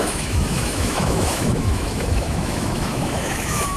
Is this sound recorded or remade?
remade